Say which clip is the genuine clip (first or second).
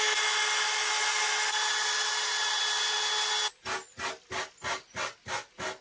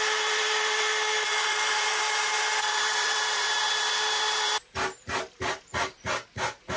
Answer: first